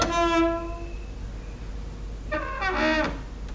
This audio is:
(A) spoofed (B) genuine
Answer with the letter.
B